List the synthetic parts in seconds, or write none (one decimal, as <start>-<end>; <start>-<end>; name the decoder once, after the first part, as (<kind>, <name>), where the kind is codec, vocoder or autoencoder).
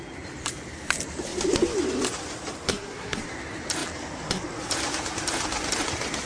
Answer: 2.7-3.2 (codec, SNAC)